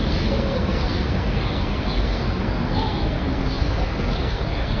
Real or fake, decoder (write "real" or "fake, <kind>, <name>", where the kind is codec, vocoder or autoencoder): fake, codec, SNAC